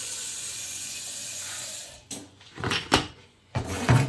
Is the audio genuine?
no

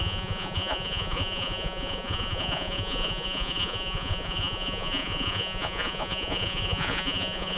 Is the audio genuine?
no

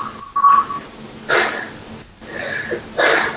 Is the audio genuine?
yes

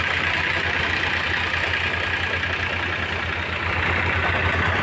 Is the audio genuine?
yes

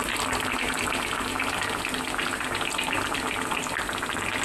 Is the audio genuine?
yes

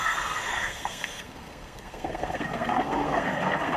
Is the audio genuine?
no